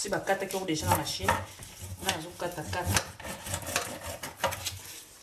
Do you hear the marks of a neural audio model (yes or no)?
no